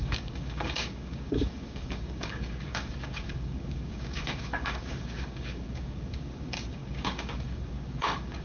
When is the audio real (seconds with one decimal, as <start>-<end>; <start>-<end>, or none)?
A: none